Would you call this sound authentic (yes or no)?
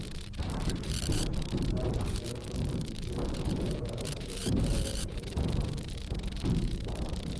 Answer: no